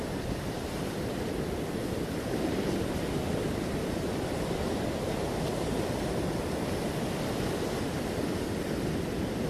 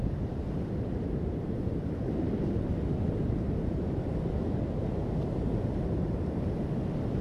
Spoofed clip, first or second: first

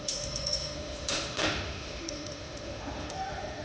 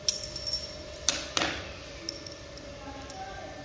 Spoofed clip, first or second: first